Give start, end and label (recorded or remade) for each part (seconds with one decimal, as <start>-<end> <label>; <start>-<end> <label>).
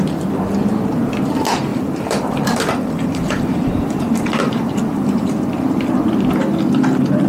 0.0-1.7 recorded; 1.7-5.3 remade; 5.3-7.3 recorded